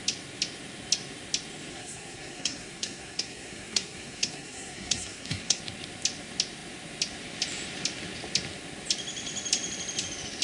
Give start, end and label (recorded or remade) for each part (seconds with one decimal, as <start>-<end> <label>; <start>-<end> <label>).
0.0-1.7 recorded; 1.7-5.6 remade; 5.6-10.4 recorded